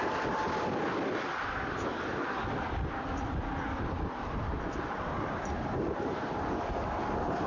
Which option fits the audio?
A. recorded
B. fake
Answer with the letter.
A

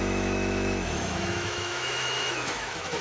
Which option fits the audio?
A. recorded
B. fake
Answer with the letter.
B